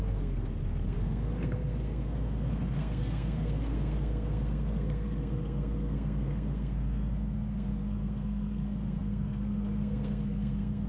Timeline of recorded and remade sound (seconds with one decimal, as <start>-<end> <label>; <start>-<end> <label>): 0.0-10.9 remade